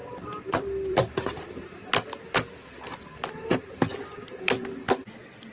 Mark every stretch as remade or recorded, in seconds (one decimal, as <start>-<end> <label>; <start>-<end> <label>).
0.0-1.6 remade; 1.6-3.9 recorded; 3.9-4.7 remade; 4.7-5.5 recorded